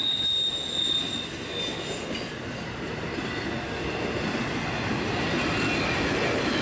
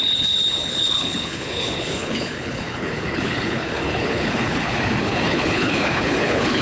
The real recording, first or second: first